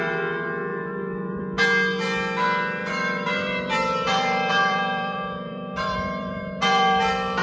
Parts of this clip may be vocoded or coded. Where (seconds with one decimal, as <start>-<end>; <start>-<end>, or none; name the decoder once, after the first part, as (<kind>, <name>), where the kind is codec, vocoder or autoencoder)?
0.7-1.4 (vocoder, BigVGAN v2); 2.8-7.0